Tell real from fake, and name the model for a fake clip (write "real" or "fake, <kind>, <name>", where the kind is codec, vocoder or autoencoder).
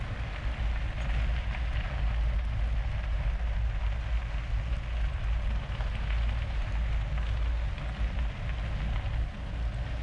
real